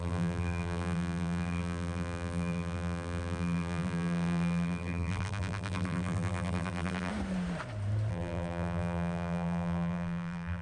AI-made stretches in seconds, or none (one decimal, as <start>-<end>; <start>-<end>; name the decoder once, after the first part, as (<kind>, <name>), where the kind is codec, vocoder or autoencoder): 0.0-7.1 (vocoder, BigVGAN v2); 8.1-10.6